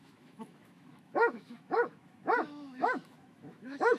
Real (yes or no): no